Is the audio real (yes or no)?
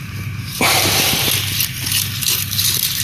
yes